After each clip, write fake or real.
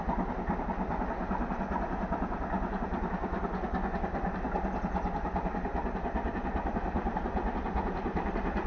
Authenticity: real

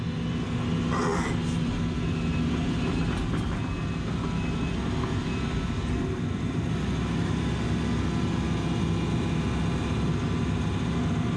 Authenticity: real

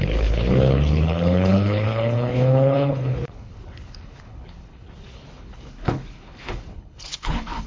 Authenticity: fake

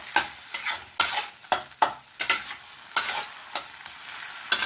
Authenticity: real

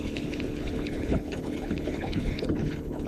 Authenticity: fake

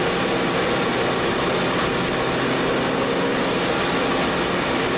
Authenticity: real